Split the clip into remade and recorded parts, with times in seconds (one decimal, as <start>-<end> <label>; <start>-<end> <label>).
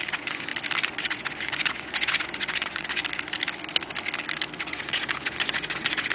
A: 0.0-0.5 remade; 0.5-1.0 recorded; 1.0-3.0 remade; 3.0-4.6 recorded; 4.6-6.1 remade